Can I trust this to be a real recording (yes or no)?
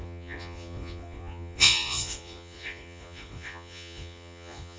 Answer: no